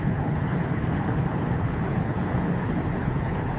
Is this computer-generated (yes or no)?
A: yes